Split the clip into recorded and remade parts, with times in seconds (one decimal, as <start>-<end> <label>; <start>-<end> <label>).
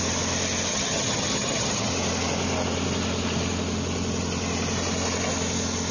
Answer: 0.0-0.7 recorded; 0.7-1.9 remade; 1.9-5.9 recorded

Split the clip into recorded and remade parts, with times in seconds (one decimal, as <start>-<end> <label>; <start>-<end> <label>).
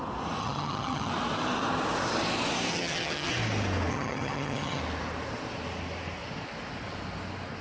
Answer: 0.0-0.4 recorded; 0.4-1.1 remade; 1.1-2.7 recorded; 2.7-3.3 remade; 3.3-3.9 recorded; 3.9-4.8 remade; 4.8-7.6 recorded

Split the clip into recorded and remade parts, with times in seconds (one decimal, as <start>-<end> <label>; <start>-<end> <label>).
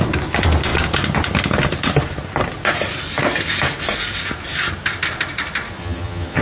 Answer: 0.0-5.8 recorded; 5.8-6.4 remade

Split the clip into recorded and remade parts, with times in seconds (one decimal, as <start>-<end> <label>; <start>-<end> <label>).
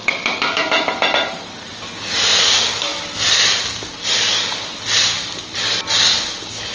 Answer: 0.0-6.7 recorded